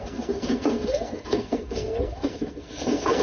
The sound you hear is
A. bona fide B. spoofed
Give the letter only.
B